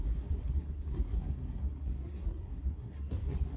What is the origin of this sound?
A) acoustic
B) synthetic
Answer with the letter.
B